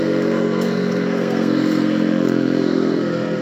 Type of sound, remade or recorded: remade